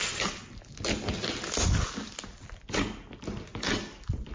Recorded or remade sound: recorded